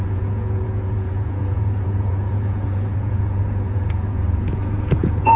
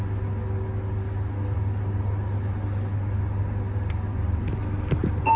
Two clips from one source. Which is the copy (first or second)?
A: first